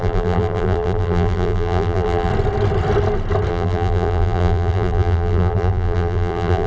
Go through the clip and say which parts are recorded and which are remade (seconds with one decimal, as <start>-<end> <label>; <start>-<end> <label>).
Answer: 0.0-2.3 remade; 2.3-3.5 recorded; 3.5-6.7 remade